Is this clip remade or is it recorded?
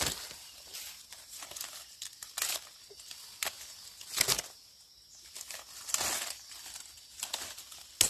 recorded